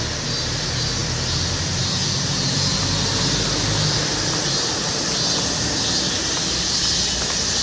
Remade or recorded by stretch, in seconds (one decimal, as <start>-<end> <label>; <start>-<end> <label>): 0.0-7.6 recorded